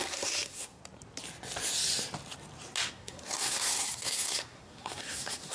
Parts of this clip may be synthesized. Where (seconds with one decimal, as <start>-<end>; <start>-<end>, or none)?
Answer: 0.0-0.8; 2.9-5.5